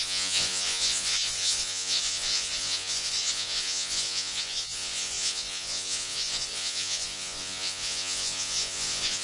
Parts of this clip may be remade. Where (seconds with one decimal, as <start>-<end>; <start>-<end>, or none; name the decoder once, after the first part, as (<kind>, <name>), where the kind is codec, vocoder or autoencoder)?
0.0-9.2 (vocoder, Vocos)